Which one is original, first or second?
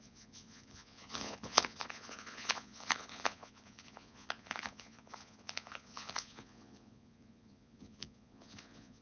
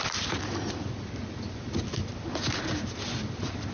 second